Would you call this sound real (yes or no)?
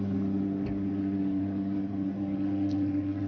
yes